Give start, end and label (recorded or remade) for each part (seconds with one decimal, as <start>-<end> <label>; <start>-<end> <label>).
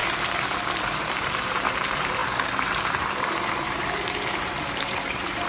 0.0-0.8 recorded; 0.8-5.5 remade